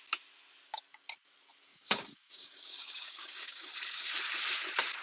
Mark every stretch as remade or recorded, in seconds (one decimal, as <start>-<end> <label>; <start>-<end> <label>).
0.0-1.7 recorded; 1.7-3.7 remade; 3.7-5.0 recorded